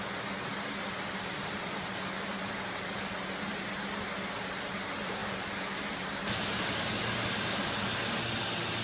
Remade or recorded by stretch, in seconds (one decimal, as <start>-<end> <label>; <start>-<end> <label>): 0.0-0.5 recorded; 0.5-3.6 remade; 3.6-5.2 recorded; 5.2-7.9 remade; 7.9-8.8 recorded